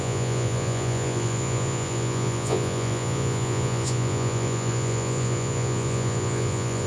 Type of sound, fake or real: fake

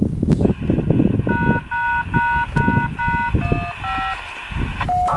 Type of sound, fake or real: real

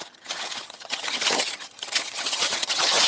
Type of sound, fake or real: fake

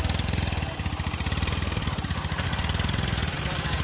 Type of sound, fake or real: fake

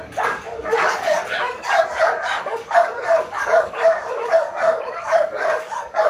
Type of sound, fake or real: fake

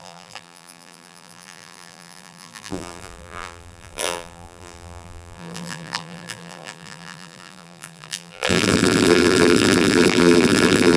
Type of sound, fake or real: fake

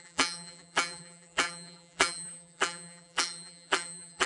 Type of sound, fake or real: fake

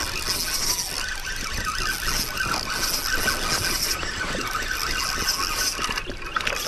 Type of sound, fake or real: real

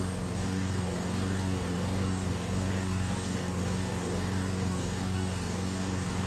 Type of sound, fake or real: fake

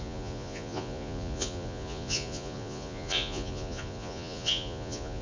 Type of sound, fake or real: fake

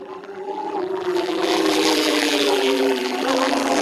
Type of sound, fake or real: fake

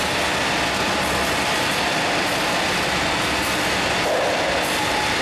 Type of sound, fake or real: real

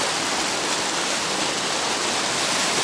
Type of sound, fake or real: real